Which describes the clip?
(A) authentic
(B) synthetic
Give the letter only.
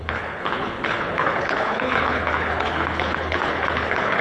B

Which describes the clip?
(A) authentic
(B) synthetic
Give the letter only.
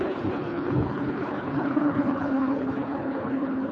B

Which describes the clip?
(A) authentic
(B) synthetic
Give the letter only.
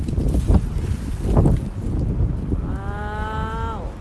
A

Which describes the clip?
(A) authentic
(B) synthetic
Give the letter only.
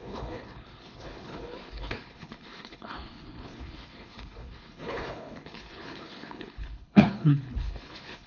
B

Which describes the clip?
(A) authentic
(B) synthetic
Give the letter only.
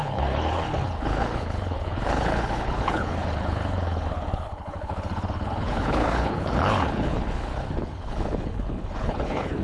B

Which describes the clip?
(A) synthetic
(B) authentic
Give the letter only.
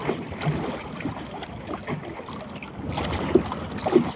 B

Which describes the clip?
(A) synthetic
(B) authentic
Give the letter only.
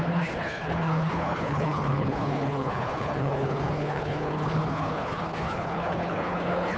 A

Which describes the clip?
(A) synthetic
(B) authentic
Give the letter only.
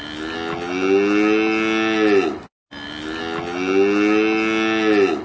B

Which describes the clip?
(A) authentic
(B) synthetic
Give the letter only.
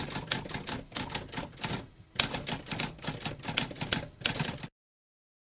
A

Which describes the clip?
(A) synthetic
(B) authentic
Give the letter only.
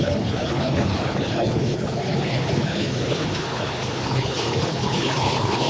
A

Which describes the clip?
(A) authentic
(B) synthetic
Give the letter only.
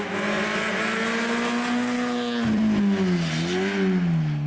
A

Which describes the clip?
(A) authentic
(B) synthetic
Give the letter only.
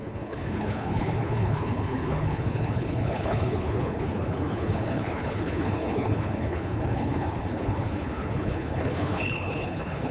B